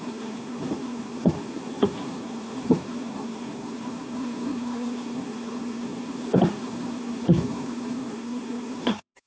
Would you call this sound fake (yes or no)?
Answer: yes